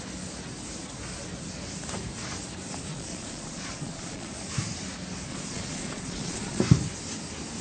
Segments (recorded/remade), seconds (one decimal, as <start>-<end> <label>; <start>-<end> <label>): 0.0-2.9 recorded; 2.9-4.3 remade; 4.3-5.3 recorded; 5.3-6.6 remade; 6.6-7.6 recorded